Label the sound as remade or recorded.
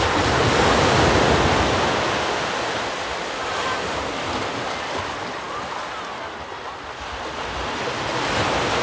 recorded